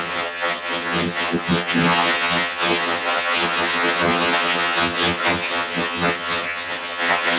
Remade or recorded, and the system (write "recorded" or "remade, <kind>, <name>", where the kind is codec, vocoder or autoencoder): remade, vocoder, HiFi-GAN